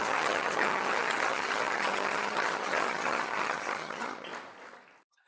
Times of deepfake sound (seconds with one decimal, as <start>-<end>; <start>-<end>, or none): 0.0-4.3